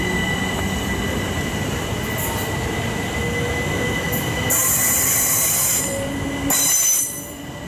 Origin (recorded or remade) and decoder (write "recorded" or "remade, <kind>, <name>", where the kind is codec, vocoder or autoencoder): recorded